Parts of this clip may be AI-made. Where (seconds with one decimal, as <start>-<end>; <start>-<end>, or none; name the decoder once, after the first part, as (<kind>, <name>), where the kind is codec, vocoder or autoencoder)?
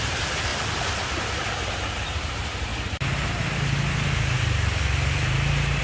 none